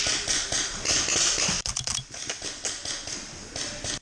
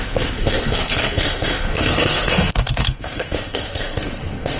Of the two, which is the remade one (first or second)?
second